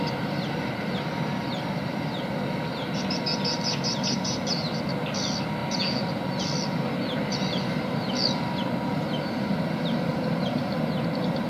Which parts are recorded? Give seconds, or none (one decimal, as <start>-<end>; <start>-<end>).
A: 0.0-11.5